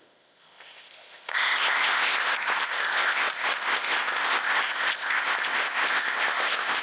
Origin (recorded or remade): remade